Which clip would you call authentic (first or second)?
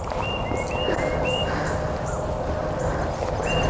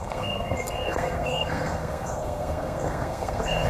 first